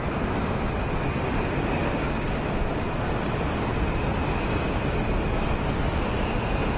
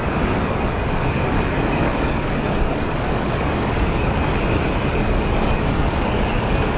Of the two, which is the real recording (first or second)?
first